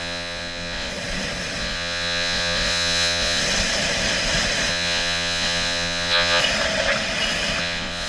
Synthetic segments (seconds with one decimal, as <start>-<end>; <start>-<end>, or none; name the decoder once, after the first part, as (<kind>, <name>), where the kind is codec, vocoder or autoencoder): 0.0-0.9 (vocoder, Vocos); 1.6-3.4; 4.7-6.4; 7.6-8.1